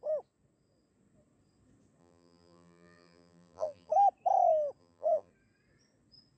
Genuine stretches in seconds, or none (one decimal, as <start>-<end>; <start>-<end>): 0.0-2.0; 3.9-4.8; 5.3-6.4